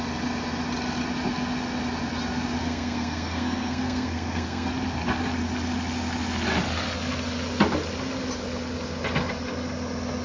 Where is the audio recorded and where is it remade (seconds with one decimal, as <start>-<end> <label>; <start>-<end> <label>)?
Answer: 0.0-2.6 recorded; 2.6-4.7 remade; 4.7-10.2 recorded